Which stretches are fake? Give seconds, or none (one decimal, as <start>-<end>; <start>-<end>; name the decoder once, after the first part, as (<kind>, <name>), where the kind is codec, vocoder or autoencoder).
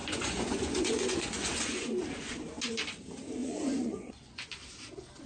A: 0.0-1.9 (vocoder, Vocos); 3.4-4.5